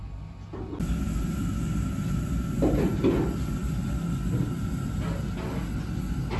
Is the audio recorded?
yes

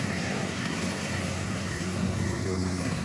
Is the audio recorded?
no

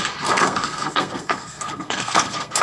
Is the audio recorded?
no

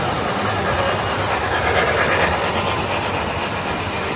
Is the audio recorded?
yes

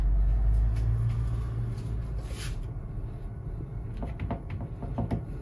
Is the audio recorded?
yes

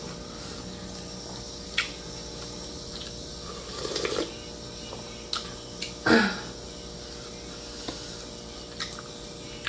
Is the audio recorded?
yes